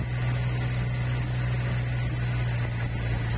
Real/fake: real